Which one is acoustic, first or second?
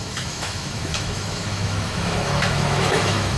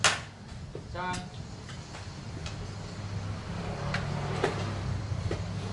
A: second